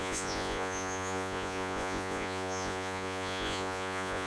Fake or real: fake